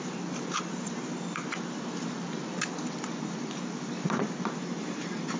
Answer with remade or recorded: recorded